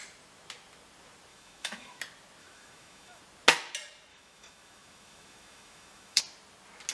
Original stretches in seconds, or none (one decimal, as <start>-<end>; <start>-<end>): 0.0-1.3; 2.0-2.4; 3.2-4.1; 6.2-6.9